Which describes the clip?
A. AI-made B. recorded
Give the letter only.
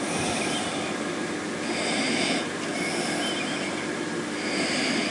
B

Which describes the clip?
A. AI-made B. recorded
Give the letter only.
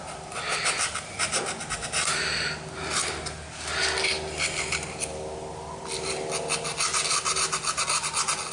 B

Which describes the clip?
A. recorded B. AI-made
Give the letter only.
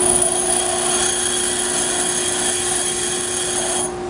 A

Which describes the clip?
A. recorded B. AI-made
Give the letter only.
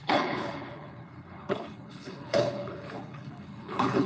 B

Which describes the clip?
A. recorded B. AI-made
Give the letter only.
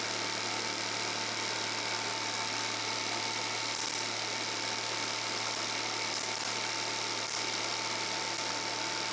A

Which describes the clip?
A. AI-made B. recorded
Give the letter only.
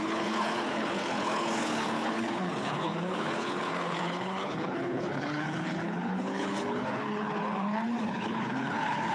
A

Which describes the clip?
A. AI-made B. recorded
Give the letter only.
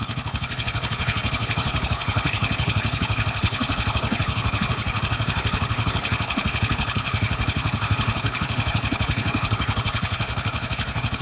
A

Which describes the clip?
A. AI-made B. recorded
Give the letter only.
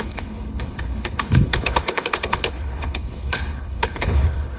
A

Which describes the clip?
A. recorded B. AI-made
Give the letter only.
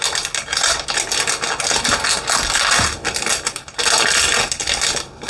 A